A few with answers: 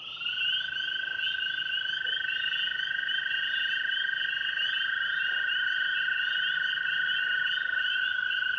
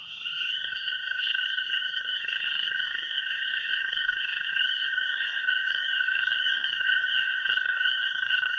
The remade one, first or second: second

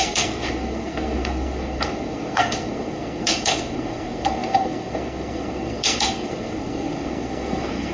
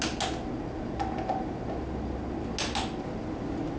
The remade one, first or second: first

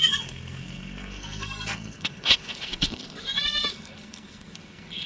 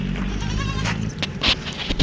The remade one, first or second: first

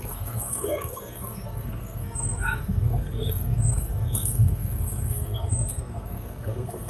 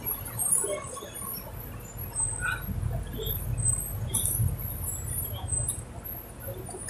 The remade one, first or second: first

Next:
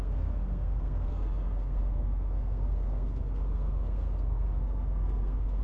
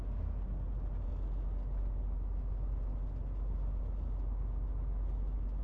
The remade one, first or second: first